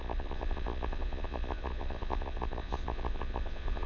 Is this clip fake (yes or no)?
yes